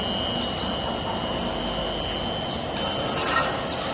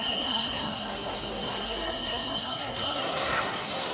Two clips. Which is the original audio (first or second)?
first